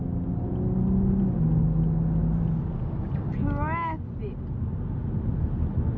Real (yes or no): yes